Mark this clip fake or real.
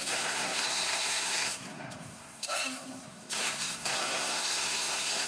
fake